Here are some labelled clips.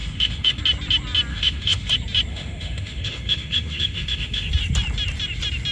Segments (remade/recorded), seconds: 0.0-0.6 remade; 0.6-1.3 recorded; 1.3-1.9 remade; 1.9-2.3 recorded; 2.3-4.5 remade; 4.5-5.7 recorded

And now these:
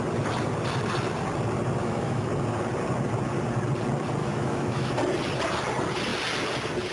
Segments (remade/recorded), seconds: 0.0-1.8 recorded; 1.8-2.3 remade; 2.3-4.2 recorded; 4.2-4.9 remade; 4.9-6.9 recorded

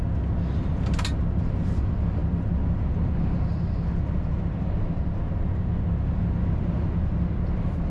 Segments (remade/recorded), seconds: 0.0-7.9 recorded

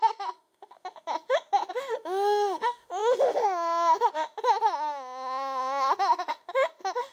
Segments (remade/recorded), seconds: 0.0-7.1 remade

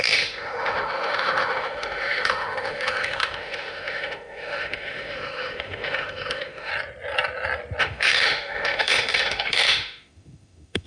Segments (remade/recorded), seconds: 0.0-6.7 remade; 6.7-7.8 recorded; 7.8-10.9 remade

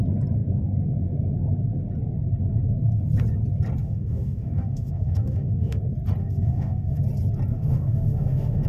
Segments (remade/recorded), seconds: 0.0-3.8 recorded; 3.8-5.8 remade; 5.8-6.2 recorded; 6.2-7.0 remade; 7.0-7.5 recorded; 7.5-8.7 remade

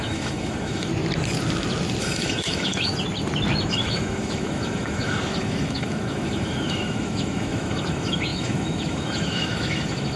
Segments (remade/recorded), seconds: 0.0-0.9 remade; 0.9-2.0 recorded; 2.0-2.9 remade; 2.9-3.7 recorded; 3.7-10.2 remade

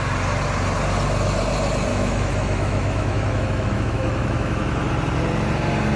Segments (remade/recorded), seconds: 0.0-1.9 recorded; 1.9-4.9 remade; 4.9-6.0 recorded